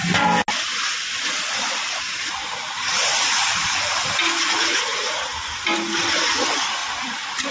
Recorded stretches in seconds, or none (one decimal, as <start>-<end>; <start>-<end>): 0.0-7.5